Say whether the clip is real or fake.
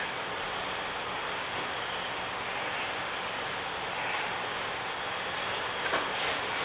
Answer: real